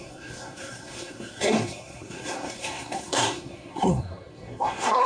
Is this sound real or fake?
fake